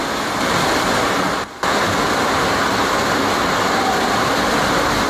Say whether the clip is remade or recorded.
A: recorded